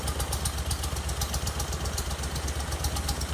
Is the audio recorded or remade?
recorded